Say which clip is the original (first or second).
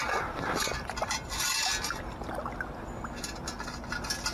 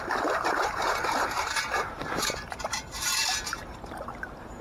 first